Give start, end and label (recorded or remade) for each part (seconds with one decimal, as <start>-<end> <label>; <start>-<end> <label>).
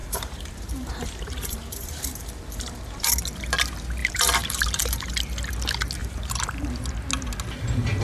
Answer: 0.0-3.1 remade; 3.1-4.0 recorded; 4.0-5.1 remade; 5.1-6.0 recorded; 6.0-6.7 remade; 6.7-8.0 recorded